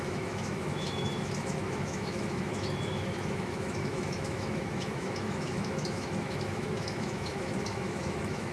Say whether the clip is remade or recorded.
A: remade